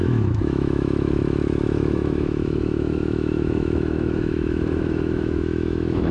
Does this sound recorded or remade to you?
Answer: remade